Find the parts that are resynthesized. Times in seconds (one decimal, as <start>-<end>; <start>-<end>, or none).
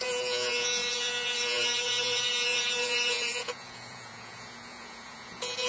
0.0-5.7